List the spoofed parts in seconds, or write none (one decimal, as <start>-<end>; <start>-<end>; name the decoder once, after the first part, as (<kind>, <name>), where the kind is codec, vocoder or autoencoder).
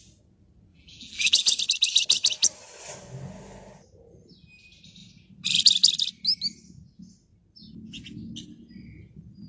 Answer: 0.7-1.6 (vocoder, BigVGAN v2)